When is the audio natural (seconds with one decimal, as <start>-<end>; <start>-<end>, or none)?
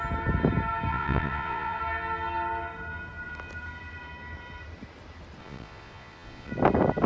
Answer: 0.0-0.9; 1.8-5.4; 6.5-7.1